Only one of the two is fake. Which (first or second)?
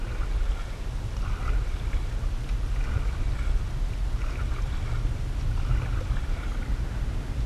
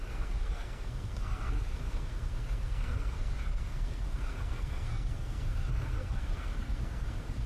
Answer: second